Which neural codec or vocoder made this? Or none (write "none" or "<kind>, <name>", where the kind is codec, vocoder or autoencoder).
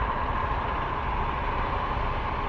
none